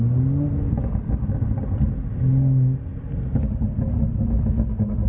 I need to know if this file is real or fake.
real